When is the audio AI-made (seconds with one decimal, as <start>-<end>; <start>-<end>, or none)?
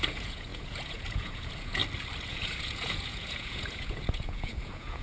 0.0-1.8; 2.3-5.0